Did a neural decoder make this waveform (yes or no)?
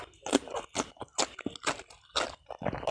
no